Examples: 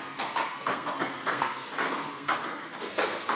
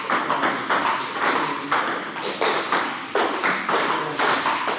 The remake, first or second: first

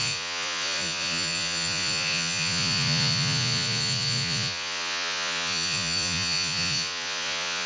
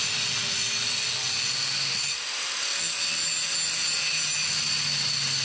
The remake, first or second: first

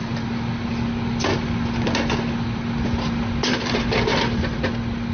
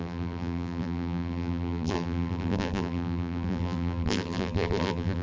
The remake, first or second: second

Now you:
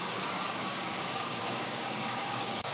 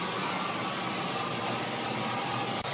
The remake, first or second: first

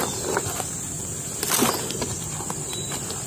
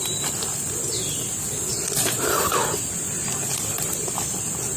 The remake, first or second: second